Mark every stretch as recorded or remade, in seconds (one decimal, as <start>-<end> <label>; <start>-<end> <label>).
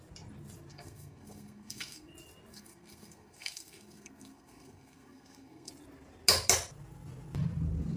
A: 0.0-0.7 recorded; 0.7-2.1 remade; 2.1-2.5 recorded; 2.5-5.7 remade; 5.7-8.0 recorded